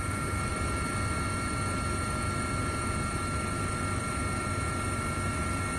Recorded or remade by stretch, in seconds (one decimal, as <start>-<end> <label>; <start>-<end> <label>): 0.0-5.8 recorded